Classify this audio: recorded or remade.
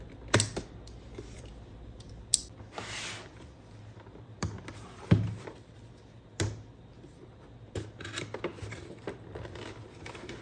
recorded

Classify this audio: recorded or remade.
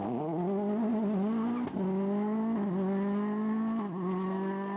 recorded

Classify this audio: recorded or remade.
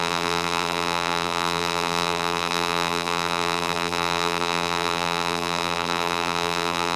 remade